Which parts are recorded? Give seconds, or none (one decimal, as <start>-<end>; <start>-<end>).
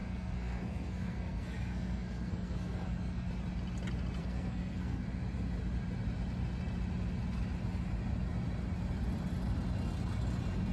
3.3-4.2; 5.0-10.7